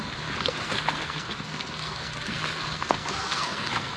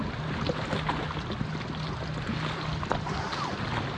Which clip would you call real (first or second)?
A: second